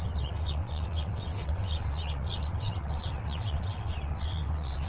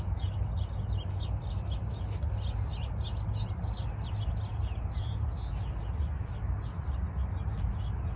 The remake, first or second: first